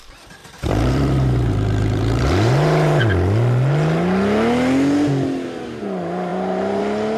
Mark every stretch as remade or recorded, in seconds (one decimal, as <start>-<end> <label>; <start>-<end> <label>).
0.0-0.4 recorded; 0.4-3.0 remade; 3.0-6.3 recorded; 6.3-6.8 remade; 6.8-7.2 recorded